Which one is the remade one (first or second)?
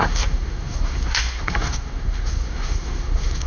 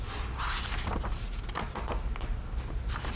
first